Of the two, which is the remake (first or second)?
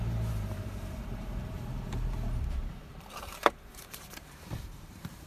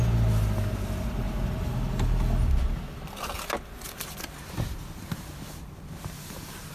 first